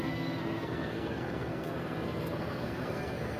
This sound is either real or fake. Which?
fake